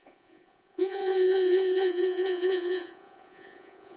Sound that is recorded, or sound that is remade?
remade